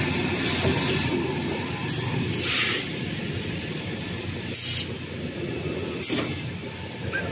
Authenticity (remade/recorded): recorded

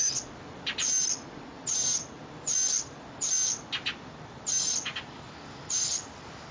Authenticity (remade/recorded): recorded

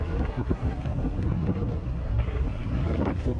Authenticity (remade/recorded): remade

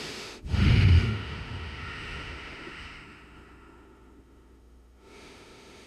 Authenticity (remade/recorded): remade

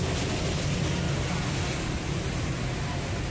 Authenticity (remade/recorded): recorded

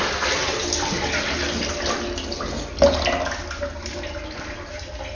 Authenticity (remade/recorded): recorded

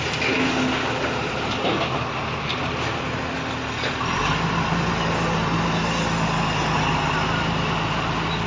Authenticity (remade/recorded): recorded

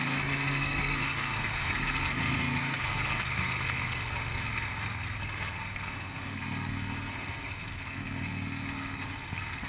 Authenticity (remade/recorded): remade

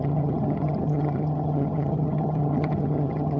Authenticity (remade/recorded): remade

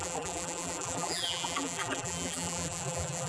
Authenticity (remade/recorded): remade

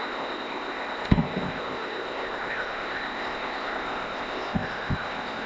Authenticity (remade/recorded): remade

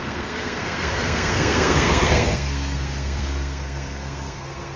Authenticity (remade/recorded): remade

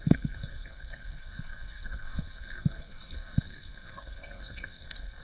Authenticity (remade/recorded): remade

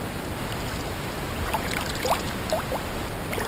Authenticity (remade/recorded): recorded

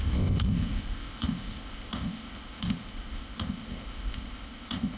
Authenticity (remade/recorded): remade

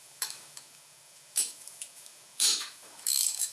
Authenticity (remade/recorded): remade